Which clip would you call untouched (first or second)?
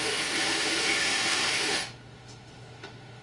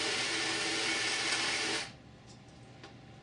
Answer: second